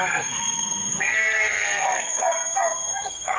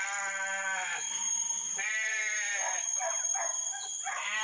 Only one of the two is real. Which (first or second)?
second